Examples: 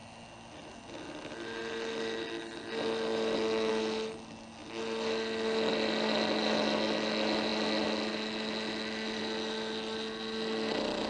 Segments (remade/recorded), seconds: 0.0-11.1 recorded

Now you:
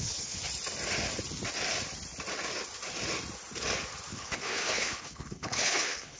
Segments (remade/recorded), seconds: 0.0-0.4 remade; 0.4-4.1 recorded; 4.1-6.2 remade